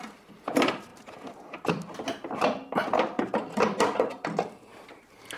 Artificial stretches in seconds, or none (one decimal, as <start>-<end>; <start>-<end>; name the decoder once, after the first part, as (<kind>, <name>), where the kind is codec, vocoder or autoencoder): 0.0-5.4 (vocoder, BigVGAN v2)